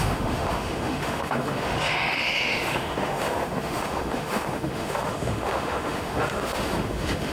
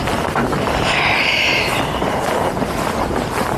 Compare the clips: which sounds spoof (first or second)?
first